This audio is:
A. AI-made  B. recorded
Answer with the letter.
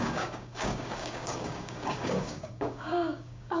A